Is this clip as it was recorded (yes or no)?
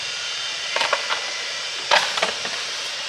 yes